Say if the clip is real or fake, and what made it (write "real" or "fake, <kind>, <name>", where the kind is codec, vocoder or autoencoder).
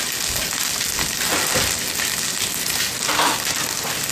real